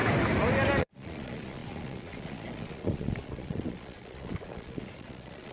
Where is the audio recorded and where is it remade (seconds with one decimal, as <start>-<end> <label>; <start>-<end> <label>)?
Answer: 0.0-0.8 recorded; 0.8-5.5 remade